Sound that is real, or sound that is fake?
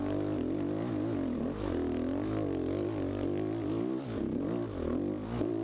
real